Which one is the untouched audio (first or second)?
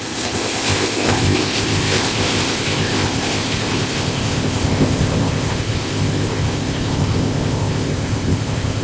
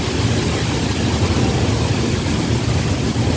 second